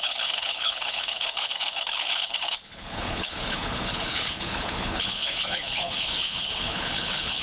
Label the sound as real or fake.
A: fake